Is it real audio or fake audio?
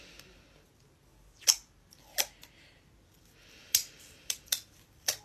real